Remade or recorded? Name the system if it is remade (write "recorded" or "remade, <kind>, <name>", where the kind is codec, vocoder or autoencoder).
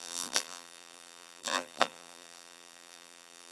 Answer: remade, vocoder, BigVGAN v2